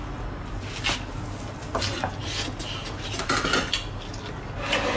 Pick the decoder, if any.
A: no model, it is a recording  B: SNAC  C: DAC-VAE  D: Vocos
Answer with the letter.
A